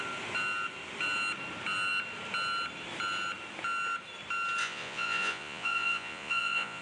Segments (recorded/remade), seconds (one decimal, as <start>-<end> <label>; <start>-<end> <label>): 0.0-4.6 recorded; 4.6-6.8 remade